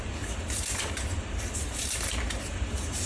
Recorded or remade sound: remade